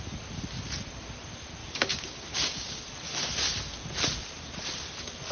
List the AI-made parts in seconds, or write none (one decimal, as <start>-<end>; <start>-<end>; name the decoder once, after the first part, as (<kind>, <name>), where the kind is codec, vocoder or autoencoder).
1.6-2.8 (codec, DAC)